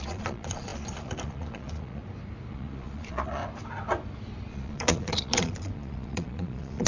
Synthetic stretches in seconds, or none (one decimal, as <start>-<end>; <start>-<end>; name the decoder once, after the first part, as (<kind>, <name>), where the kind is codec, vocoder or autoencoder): 0.0-2.0 (vocoder, Vocos); 2.5-3.4; 4.5-6.9